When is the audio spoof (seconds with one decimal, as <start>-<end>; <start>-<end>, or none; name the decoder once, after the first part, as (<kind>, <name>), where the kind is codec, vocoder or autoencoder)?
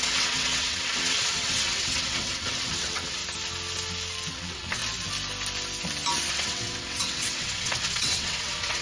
0.0-3.2 (vocoder, WaveNeXt); 4.3-4.8; 6.3-8.8